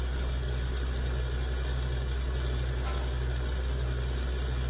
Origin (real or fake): real